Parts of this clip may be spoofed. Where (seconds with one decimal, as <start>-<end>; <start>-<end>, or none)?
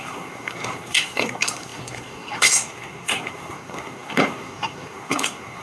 0.0-5.6